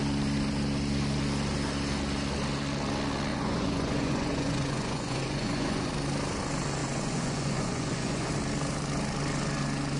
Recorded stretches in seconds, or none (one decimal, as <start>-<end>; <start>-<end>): 0.0-3.3; 5.9-6.8; 8.3-10.0